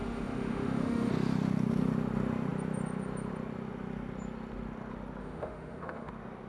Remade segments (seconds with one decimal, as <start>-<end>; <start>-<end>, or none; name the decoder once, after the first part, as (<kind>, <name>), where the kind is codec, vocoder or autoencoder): 0.0-1.1 (autoencoder, DAC-VAE); 5.2-6.1